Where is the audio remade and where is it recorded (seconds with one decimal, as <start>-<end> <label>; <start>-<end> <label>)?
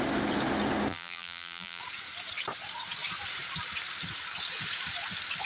0.0-0.9 recorded; 0.9-1.8 remade; 1.8-5.5 recorded